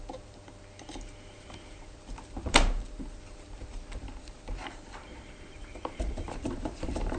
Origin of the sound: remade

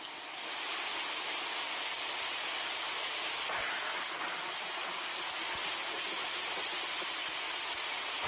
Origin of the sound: recorded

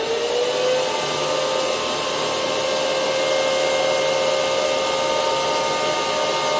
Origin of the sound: recorded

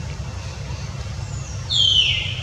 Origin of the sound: recorded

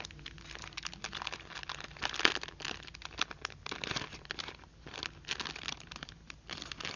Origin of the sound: recorded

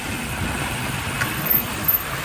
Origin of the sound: remade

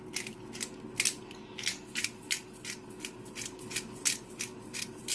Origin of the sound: recorded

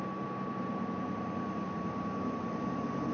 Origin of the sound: remade